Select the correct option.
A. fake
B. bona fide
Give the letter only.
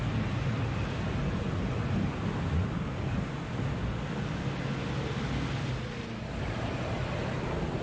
B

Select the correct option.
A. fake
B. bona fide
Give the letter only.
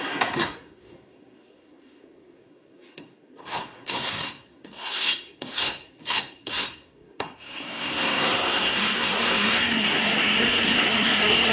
A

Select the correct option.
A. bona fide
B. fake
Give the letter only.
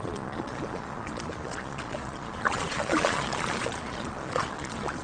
B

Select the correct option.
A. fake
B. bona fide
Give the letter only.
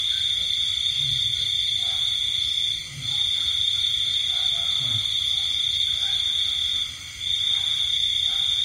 A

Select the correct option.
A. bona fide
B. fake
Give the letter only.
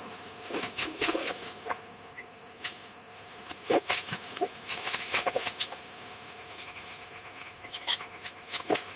B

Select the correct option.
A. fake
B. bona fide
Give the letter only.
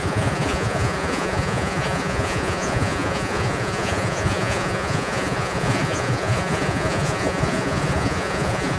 A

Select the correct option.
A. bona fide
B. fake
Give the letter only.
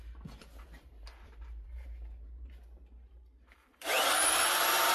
B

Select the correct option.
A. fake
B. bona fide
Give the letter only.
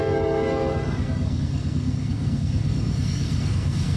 A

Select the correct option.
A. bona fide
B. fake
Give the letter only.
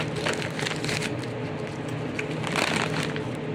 A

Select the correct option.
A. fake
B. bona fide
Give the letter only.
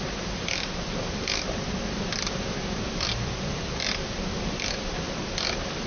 A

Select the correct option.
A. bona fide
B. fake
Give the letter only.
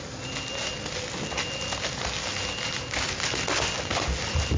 A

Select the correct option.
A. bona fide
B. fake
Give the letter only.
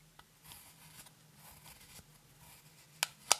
A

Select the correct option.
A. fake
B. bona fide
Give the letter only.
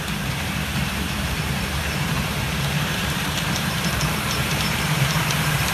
A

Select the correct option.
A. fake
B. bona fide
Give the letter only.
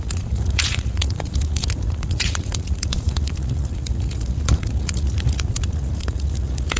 A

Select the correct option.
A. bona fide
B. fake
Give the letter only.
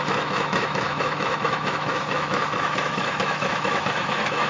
B